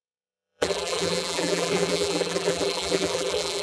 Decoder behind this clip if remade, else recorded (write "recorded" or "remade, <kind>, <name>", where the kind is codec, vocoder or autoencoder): remade, vocoder, BigVGAN v2